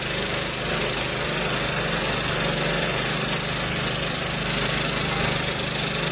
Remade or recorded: recorded